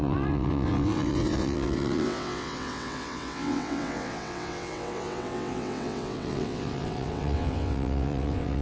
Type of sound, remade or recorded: remade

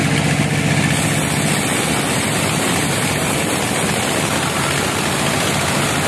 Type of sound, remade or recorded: recorded